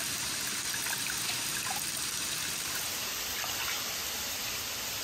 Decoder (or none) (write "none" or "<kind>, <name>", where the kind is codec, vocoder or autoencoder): vocoder, BigVGAN v2